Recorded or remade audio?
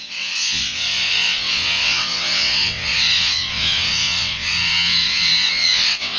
remade